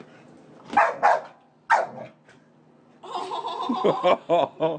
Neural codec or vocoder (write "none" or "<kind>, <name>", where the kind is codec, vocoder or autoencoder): none